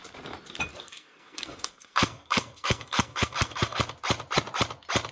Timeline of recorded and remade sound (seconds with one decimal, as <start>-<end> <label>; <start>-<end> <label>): 0.0-0.7 recorded; 0.7-3.8 remade; 3.8-5.1 recorded